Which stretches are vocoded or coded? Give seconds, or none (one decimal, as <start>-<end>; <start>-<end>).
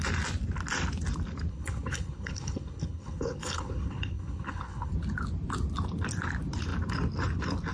1.5-4.9